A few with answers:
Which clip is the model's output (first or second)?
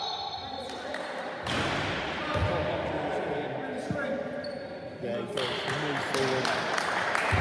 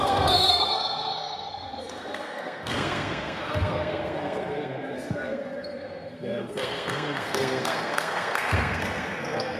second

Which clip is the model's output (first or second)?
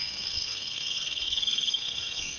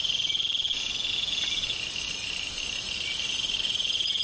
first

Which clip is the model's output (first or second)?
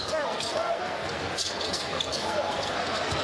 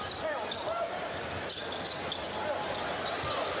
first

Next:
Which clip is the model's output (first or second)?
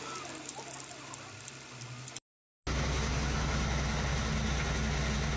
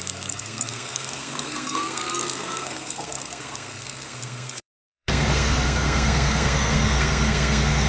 second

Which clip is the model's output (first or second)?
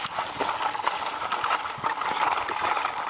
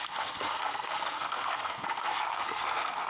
second